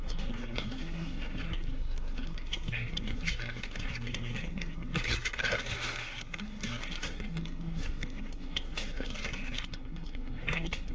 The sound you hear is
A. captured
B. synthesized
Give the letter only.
B